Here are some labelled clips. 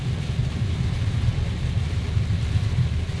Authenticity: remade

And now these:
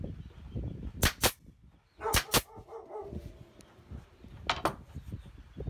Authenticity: recorded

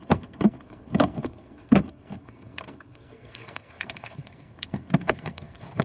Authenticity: remade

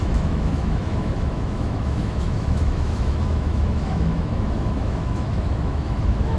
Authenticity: remade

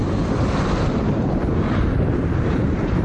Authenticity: remade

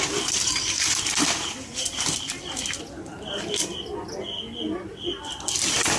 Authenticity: recorded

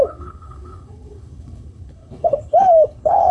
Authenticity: remade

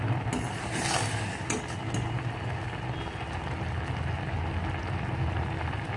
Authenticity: recorded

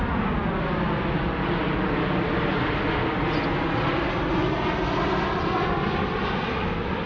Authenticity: recorded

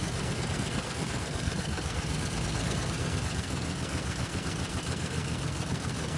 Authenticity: remade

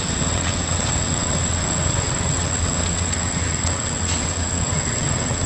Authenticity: remade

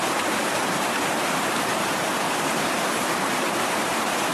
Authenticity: remade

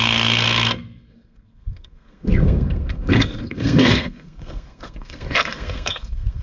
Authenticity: remade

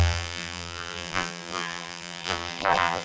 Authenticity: remade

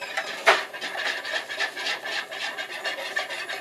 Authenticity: recorded